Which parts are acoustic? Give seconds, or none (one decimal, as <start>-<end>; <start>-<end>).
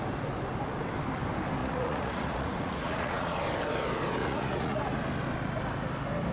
0.0-1.6; 3.4-4.2; 4.8-6.3